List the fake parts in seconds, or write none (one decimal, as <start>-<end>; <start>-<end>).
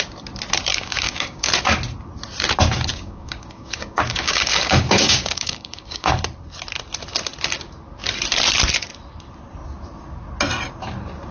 0.7-1.5; 2.9-6.1